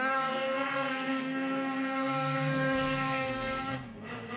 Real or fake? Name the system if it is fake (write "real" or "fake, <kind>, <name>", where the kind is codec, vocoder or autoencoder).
fake, codec, SNAC